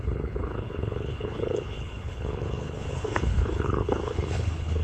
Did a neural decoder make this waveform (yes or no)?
yes